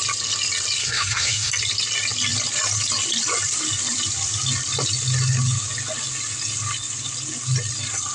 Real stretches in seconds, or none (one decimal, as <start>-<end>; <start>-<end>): 0.0-0.8; 1.5-8.1